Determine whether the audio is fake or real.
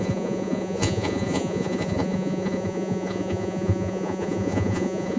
fake